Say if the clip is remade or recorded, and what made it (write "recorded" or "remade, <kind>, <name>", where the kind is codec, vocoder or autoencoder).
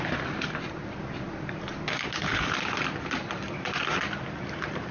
recorded